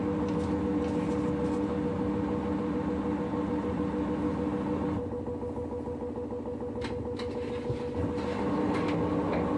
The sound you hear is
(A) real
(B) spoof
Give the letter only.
A